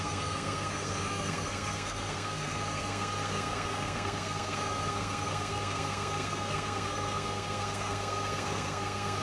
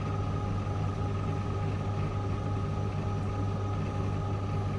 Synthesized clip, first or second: first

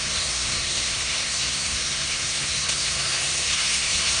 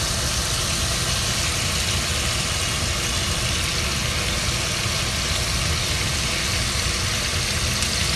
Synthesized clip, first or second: first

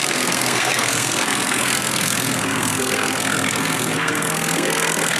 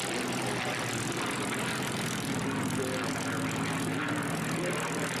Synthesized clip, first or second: first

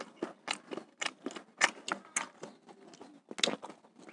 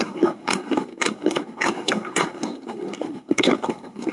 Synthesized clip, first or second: second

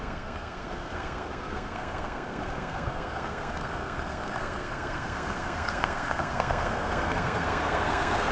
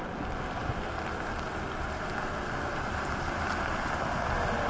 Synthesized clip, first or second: first